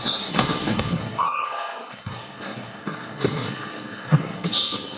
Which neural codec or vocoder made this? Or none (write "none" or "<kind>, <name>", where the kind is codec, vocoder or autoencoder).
codec, SNAC